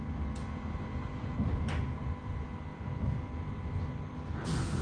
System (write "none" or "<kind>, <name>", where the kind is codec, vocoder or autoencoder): none